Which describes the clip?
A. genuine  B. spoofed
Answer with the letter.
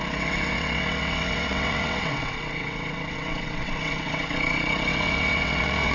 B